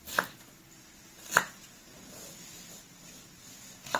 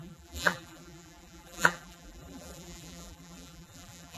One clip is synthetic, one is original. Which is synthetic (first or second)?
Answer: second